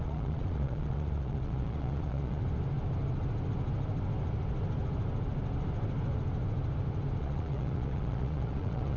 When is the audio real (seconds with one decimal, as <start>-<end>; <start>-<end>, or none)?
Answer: 2.4-7.2